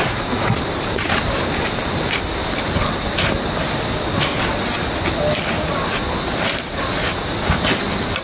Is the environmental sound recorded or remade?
recorded